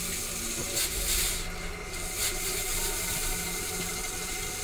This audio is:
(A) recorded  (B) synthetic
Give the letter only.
A